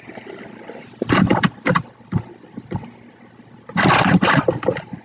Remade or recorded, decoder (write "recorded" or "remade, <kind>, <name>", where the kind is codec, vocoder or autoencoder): recorded